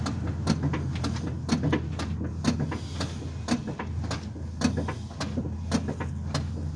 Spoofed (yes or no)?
no